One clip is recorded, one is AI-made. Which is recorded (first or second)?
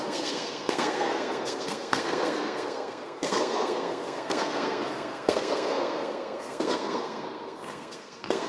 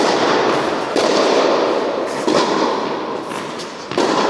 second